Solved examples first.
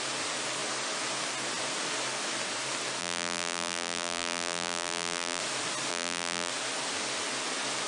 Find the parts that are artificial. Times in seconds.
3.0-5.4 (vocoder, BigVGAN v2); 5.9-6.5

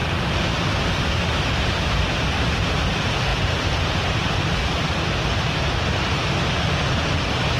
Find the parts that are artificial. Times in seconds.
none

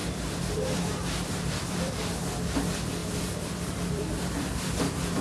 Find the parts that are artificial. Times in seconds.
0.0-1.9 (vocoder, BigVGAN v2); 3.0-5.2